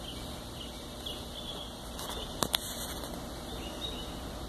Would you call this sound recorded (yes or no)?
yes